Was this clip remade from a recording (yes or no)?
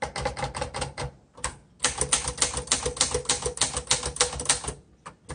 no